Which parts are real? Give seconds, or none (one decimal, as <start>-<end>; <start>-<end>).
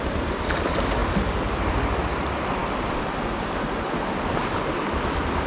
0.0-5.5